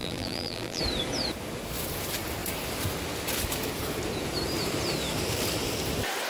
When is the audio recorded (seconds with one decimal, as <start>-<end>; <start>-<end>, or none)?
0.8-6.3